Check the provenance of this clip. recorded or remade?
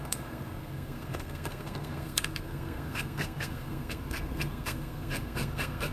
remade